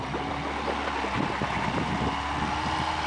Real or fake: real